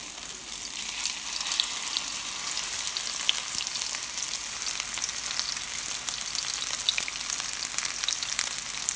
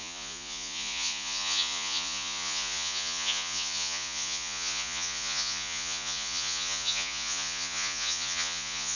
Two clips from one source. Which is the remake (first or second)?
second